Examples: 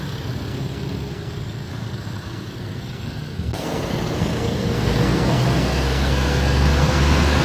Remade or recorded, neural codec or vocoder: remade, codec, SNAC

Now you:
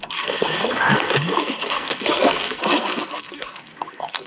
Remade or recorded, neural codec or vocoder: remade, codec, SNAC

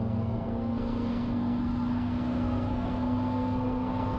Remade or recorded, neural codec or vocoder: remade, codec, SNAC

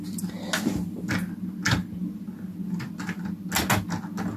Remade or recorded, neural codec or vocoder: recorded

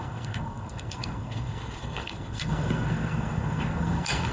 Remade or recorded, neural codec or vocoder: remade, codec, SNAC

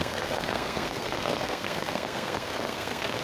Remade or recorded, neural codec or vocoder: remade, codec, SNAC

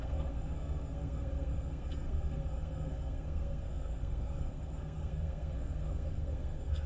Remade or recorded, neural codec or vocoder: remade, codec, SNAC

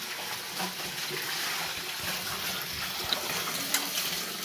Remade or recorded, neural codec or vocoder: recorded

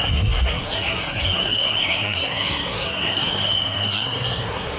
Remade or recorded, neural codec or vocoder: remade, codec, SNAC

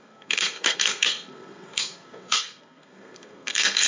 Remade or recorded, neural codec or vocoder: remade, codec, SNAC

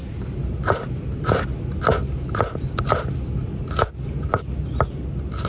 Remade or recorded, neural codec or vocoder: recorded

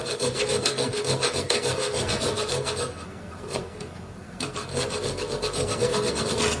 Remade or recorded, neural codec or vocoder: remade, codec, SNAC